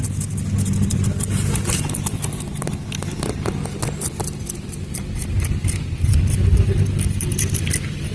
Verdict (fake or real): real